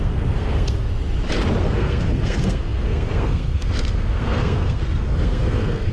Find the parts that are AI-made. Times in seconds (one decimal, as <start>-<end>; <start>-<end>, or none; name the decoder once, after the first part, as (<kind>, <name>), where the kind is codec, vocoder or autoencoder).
0.0-0.9 (codec, SNAC); 1.6-5.9